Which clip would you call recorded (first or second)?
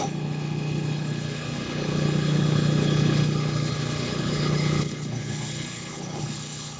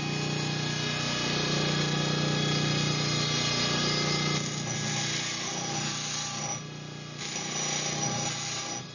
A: second